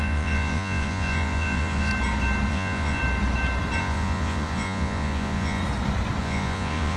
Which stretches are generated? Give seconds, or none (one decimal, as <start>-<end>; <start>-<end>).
0.0-1.9; 2.5-3.0; 3.8-5.6; 6.2-7.0